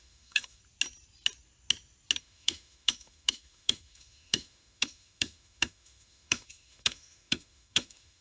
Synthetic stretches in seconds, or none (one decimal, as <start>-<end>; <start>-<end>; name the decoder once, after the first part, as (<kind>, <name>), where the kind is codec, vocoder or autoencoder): 0.0-0.6 (autoencoder, DAC-VAE); 2.2-8.2